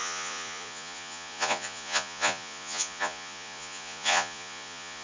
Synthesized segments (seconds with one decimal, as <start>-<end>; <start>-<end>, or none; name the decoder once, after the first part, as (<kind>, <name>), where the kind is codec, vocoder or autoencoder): 0.0-5.0 (vocoder, Vocos)